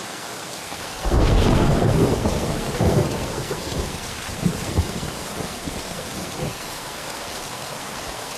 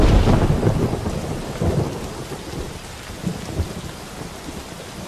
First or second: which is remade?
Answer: first